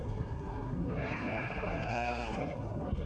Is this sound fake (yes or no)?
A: yes